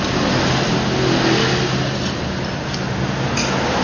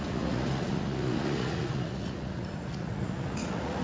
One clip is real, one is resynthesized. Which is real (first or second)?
first